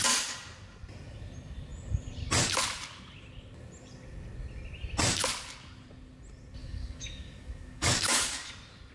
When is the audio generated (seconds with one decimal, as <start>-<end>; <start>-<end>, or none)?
6.6-8.5